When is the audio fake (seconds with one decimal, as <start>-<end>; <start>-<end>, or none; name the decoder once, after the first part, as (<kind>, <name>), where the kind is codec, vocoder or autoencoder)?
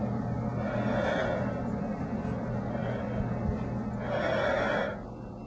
none